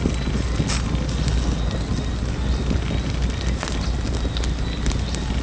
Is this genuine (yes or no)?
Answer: yes